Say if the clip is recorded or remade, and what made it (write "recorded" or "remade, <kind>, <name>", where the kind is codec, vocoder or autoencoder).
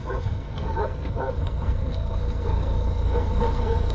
remade, codec, SNAC